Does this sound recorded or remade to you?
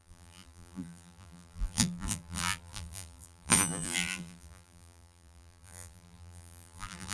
remade